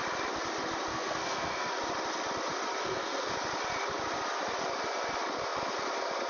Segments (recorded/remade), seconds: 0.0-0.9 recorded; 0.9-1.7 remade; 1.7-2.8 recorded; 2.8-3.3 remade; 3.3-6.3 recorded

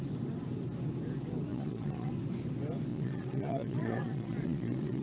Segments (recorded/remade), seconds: 0.0-1.5 recorded; 1.5-2.1 remade; 2.1-2.9 recorded; 2.9-5.0 remade

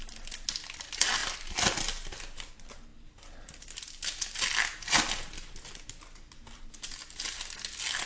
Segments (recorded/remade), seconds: 0.0-8.1 recorded

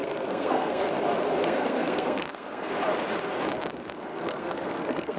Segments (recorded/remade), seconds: 0.0-0.9 remade; 0.9-1.4 recorded; 1.4-2.7 remade; 2.7-4.1 recorded; 4.1-5.2 remade

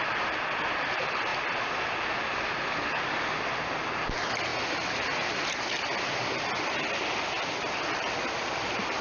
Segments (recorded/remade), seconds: 0.0-9.0 recorded